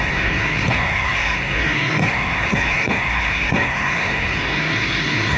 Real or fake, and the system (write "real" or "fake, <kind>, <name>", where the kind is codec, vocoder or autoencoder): fake, codec, SNAC